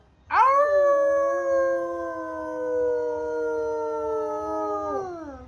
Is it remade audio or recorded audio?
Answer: recorded